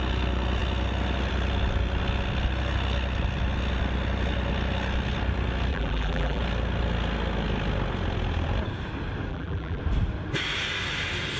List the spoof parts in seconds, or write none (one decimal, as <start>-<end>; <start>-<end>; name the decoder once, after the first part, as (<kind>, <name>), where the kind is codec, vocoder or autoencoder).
5.7-6.4 (vocoder, BigVGAN v2); 9.3-9.8